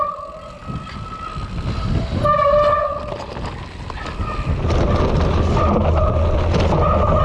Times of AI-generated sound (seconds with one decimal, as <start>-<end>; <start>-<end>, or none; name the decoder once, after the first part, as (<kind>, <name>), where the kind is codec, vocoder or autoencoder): none